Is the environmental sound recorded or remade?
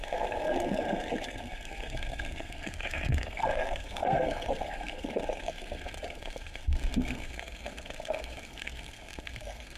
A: remade